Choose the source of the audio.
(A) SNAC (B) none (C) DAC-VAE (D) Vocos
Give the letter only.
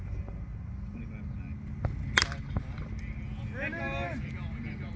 B